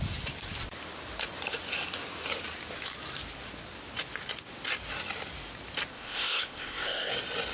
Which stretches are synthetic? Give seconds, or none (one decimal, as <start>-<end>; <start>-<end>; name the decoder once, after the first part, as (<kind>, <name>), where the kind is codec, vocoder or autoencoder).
5.9-7.1 (codec, ZipCodec)